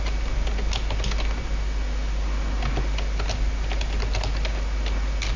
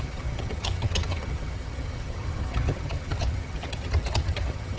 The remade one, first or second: second